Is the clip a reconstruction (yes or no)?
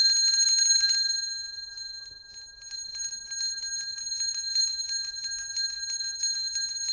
no